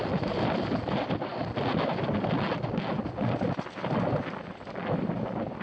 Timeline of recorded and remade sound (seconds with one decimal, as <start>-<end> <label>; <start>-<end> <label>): 0.0-5.6 recorded